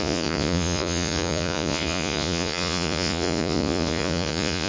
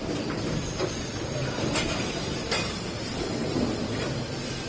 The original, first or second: second